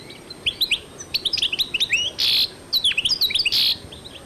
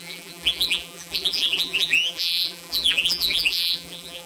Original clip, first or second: first